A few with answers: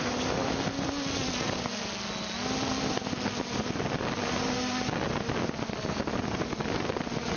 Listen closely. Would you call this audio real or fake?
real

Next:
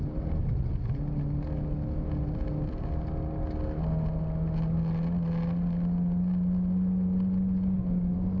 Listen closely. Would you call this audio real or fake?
real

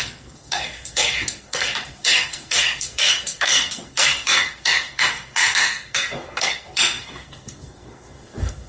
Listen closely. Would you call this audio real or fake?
fake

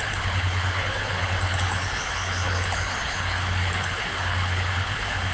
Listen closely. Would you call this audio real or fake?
fake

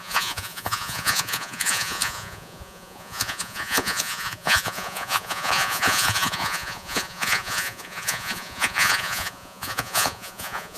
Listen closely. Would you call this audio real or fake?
fake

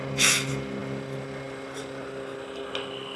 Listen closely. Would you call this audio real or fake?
real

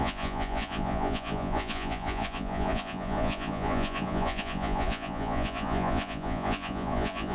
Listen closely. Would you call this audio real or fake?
fake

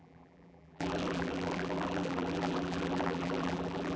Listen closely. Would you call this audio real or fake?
fake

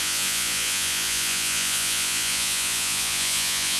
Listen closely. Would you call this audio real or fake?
fake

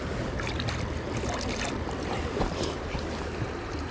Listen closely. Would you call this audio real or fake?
real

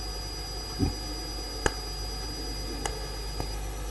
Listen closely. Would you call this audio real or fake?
real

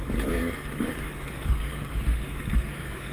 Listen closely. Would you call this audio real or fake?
fake